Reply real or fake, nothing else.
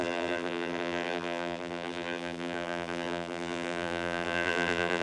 fake